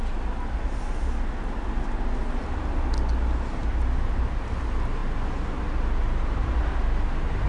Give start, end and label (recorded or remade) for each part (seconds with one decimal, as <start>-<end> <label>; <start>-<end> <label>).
0.0-7.5 recorded

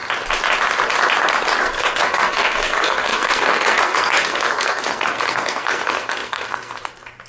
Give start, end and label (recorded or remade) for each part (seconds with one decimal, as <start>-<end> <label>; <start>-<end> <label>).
0.0-1.6 recorded; 1.6-7.3 remade

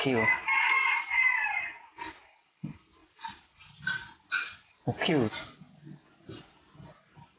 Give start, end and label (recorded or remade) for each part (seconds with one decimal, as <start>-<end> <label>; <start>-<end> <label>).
0.0-7.4 recorded

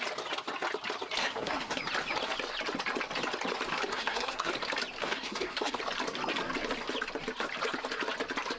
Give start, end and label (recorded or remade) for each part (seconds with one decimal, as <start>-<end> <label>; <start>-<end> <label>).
0.0-1.2 recorded; 1.2-1.8 remade; 1.8-3.9 recorded; 3.9-4.5 remade; 4.5-5.0 recorded; 5.0-5.8 remade; 5.8-8.6 recorded